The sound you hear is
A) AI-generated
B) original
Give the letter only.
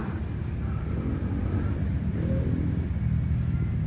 B